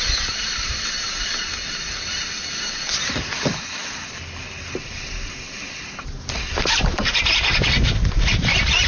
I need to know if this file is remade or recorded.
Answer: recorded